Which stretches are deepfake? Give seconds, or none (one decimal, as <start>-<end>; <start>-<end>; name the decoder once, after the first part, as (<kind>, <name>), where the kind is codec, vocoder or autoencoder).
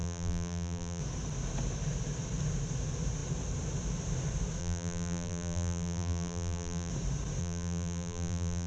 0.0-1.0 (vocoder, BigVGAN v2); 4.6-6.9; 7.4-8.7